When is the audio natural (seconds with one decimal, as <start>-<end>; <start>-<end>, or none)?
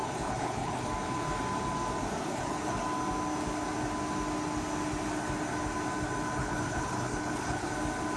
0.9-2.2; 2.8-6.4; 7.7-8.2